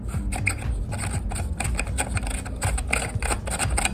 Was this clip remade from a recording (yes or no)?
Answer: no